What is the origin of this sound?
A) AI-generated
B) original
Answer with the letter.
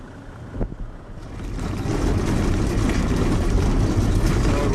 B